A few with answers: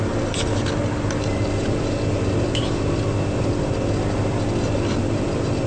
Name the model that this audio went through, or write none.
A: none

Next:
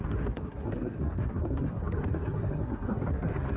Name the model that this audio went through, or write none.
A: codec, SNAC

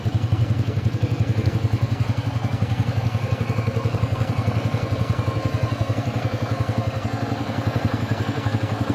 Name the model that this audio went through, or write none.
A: codec, SNAC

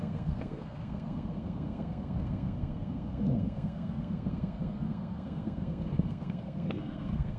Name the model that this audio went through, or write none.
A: codec, SNAC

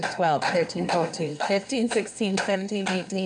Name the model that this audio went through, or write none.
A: codec, SNAC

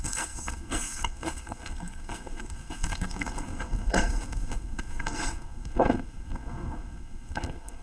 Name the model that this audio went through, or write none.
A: codec, SNAC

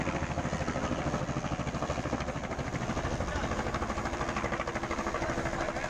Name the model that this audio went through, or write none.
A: none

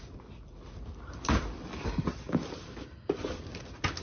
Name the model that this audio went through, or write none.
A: none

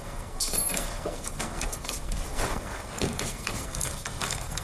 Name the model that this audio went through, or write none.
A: codec, SNAC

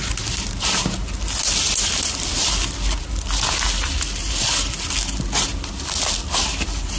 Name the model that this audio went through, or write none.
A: none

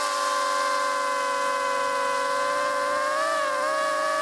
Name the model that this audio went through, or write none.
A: none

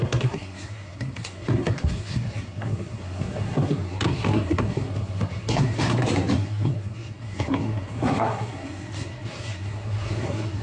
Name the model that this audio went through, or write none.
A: codec, SNAC